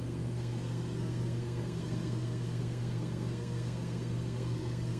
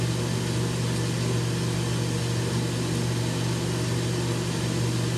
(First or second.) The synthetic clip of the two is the first